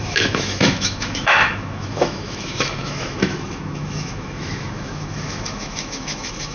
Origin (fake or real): fake